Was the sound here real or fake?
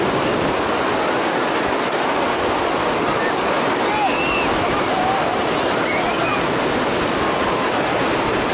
real